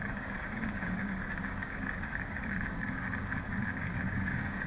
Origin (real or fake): fake